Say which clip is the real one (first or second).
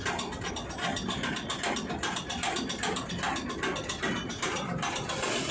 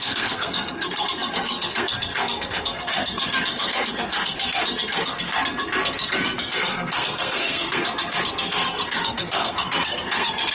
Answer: first